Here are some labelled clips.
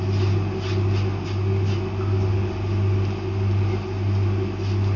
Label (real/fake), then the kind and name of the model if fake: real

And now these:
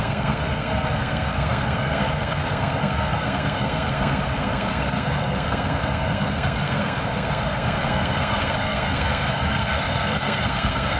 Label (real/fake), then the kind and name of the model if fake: fake, codec, SNAC